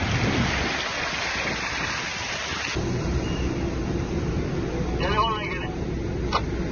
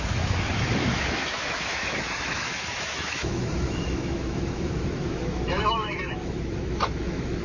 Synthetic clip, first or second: second